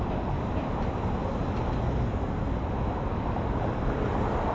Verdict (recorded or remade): recorded